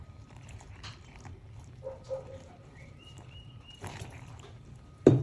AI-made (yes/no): yes